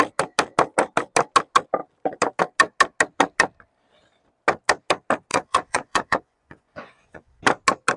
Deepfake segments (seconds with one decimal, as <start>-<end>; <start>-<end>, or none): 5.3-7.4